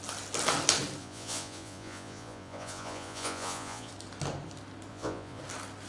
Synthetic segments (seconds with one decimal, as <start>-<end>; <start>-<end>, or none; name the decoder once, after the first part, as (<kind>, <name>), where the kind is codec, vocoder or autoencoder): 1.0-3.9 (vocoder, Vocos); 4.9-5.4